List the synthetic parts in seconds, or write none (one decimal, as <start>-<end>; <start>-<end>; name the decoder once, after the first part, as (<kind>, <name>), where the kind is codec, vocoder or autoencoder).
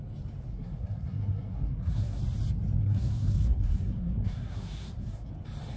0.5-2.2 (codec, SNAC); 2.8-5.3